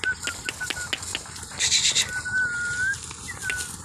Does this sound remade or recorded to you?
recorded